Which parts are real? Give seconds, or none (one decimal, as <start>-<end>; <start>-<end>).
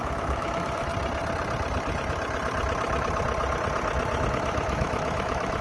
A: 0.9-4.3